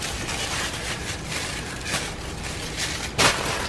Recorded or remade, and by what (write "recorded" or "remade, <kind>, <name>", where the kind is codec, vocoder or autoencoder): recorded